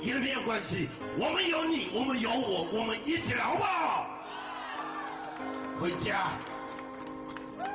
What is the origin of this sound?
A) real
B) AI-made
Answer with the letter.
B